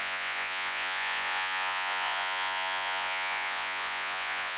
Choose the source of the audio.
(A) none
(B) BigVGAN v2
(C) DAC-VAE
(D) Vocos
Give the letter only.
D